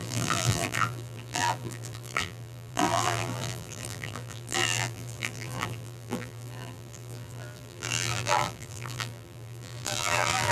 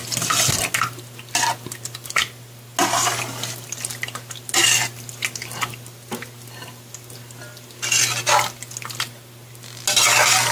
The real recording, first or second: second